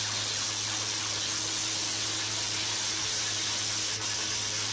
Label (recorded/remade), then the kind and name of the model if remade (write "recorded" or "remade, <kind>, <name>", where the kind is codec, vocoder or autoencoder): recorded